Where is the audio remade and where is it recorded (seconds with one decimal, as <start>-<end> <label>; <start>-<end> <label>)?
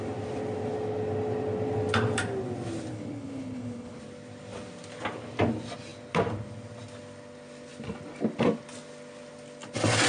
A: 0.0-2.9 recorded; 2.9-4.0 remade; 4.0-10.1 recorded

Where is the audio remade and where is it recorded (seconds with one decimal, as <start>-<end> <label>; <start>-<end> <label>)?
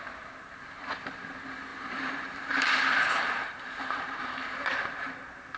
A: 0.0-1.7 recorded; 1.7-5.1 remade; 5.1-5.6 recorded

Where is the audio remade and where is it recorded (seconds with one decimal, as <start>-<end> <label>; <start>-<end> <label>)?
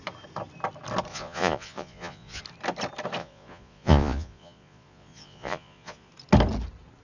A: 0.0-1.1 recorded; 1.1-2.4 remade; 2.4-3.2 recorded; 3.2-6.1 remade; 6.1-7.0 recorded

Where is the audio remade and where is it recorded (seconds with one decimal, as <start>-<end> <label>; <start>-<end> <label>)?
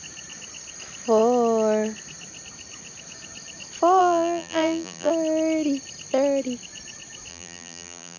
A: 0.0-4.0 recorded; 4.0-5.1 remade; 5.1-7.3 recorded; 7.3-8.2 remade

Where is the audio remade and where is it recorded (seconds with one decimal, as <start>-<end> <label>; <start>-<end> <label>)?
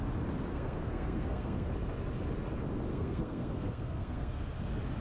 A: 0.0-0.5 recorded; 0.5-1.7 remade; 1.7-2.9 recorded; 2.9-4.4 remade; 4.4-5.0 recorded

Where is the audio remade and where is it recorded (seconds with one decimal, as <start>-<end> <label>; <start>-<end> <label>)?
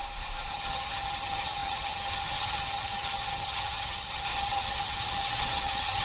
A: 0.0-0.5 recorded; 0.5-6.0 remade